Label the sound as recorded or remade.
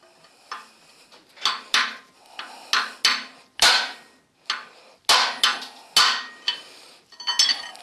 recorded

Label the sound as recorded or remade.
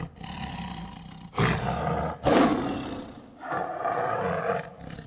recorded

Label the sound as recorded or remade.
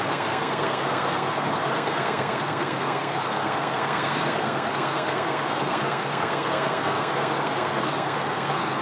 remade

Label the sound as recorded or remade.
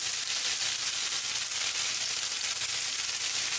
recorded